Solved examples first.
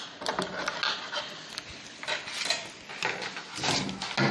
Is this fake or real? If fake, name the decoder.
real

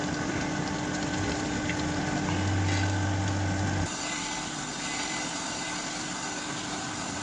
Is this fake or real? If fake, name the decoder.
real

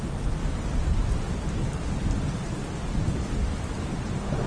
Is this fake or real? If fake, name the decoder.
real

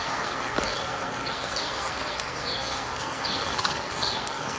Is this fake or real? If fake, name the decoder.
fake, codec, SNAC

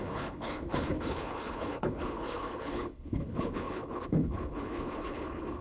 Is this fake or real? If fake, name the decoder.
fake, codec, HILCodec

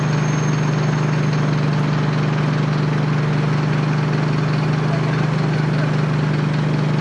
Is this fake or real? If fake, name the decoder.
real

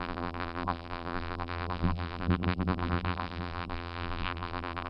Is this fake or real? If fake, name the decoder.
fake, vocoder, BigVGAN v2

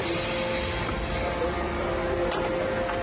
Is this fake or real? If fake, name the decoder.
real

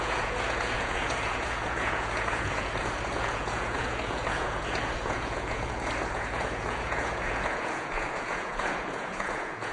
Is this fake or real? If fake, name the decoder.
fake, vocoder, Vocos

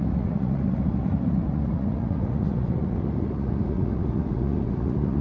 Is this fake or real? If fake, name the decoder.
fake, vocoder, Vocos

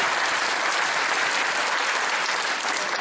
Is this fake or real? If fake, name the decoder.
real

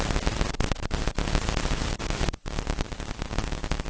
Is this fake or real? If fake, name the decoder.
real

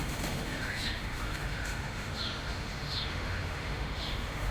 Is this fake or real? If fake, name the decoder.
fake, autoencoder, DAC-VAE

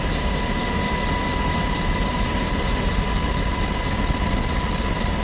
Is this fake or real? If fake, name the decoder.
real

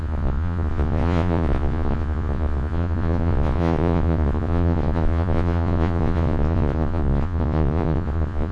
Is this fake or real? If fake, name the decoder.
fake, vocoder, Vocos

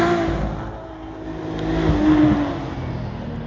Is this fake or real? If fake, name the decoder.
real